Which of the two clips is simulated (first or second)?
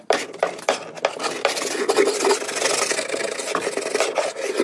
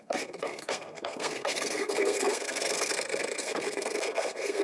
second